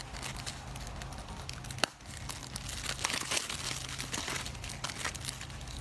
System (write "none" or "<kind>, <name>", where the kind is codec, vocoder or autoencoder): none